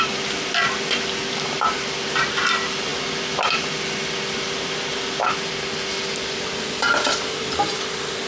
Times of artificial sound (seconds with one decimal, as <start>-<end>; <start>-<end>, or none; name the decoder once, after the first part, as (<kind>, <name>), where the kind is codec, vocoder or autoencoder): 0.0-2.9 (vocoder, BigVGAN v2); 4.8-8.3

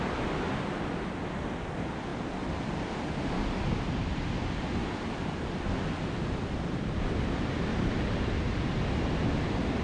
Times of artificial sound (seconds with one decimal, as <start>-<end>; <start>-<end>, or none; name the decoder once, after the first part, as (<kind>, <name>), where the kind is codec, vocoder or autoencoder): 7.7-8.6 (vocoder, BigVGAN v2)

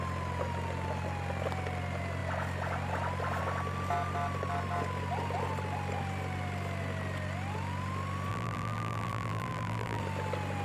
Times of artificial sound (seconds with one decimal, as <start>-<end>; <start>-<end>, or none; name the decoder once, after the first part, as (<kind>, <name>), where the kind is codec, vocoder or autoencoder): 8.3-10.0 (vocoder, BigVGAN v2)